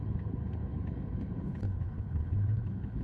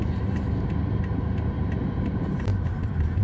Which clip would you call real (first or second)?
second